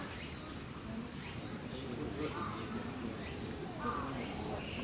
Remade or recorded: remade